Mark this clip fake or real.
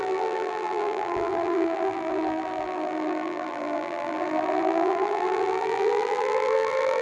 fake